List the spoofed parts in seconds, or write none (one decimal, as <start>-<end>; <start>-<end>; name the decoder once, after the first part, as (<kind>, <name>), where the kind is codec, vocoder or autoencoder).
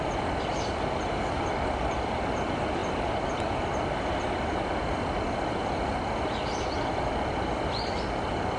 none